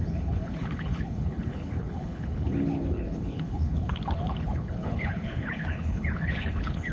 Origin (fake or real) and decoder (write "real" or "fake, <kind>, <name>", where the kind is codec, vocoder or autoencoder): fake, codec, HILCodec